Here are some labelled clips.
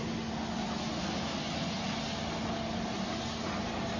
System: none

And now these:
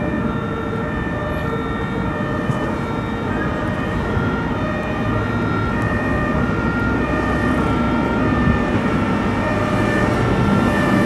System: none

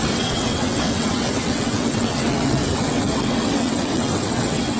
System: vocoder, WaveNeXt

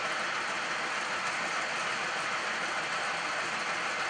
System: none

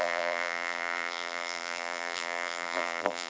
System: vocoder, BigVGAN v2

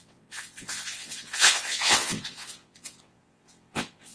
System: vocoder, WaveNeXt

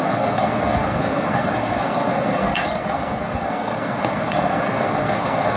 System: codec, SNAC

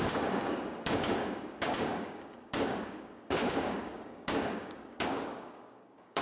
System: codec, DAC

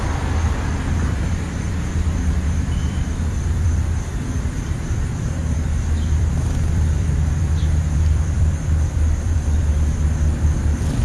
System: vocoder, BigVGAN v2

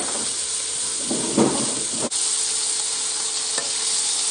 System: none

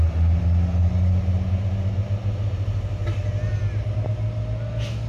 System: none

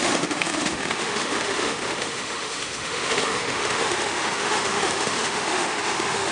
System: autoencoder, DAC-VAE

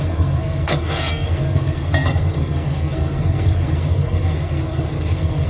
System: codec, SNAC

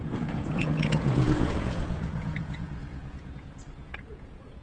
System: vocoder, Vocos